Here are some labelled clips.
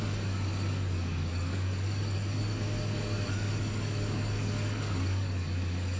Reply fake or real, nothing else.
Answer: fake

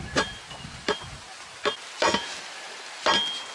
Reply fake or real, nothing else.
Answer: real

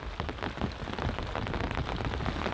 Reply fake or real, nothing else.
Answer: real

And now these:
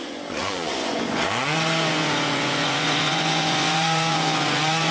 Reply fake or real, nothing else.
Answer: fake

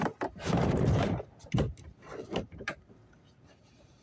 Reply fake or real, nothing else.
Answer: fake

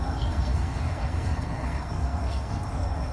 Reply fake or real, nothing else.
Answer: fake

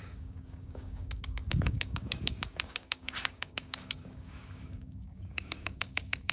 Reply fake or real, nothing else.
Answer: fake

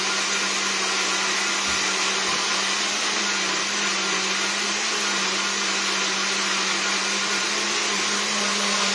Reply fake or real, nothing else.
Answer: real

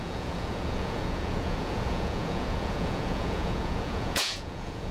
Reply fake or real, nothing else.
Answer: fake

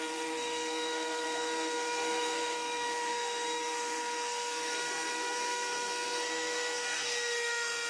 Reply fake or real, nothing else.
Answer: fake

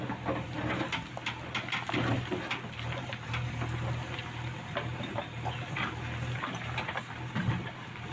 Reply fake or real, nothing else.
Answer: real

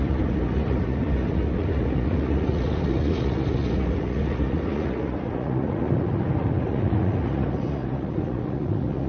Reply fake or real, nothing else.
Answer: fake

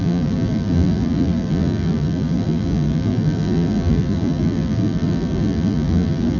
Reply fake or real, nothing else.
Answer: fake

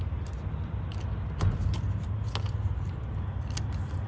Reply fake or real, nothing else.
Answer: real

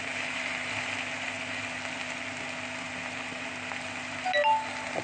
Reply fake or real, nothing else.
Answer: real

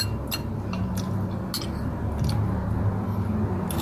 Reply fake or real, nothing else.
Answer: real